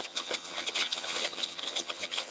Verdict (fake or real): fake